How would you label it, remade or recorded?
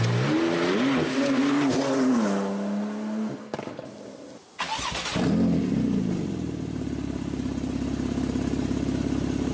recorded